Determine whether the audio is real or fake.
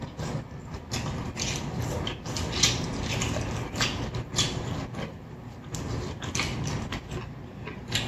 real